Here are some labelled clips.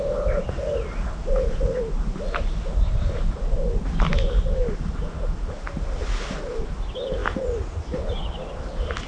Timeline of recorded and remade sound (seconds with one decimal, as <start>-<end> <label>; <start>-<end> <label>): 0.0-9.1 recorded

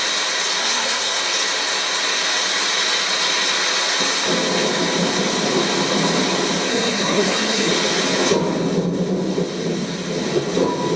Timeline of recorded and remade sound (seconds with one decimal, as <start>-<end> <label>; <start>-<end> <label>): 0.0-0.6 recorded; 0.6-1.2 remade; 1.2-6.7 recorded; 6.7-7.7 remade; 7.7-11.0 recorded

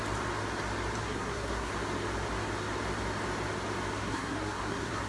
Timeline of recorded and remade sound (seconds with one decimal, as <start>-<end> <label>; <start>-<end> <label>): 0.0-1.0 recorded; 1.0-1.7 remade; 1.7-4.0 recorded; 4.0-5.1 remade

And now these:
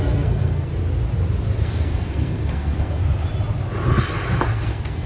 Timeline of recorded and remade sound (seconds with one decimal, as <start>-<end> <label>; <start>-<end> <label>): 0.0-0.7 remade; 0.7-1.6 recorded; 1.6-3.0 remade; 3.0-4.5 recorded; 4.5-5.1 remade

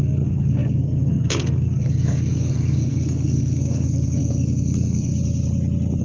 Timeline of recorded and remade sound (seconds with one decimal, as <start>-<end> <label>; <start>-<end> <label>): 0.0-5.1 remade; 5.1-6.0 recorded

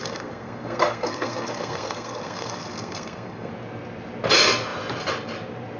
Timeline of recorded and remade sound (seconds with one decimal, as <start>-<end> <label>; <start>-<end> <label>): 0.0-3.5 remade; 3.5-5.8 recorded